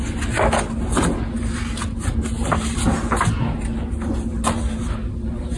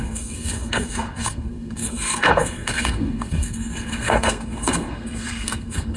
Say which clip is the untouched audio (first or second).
first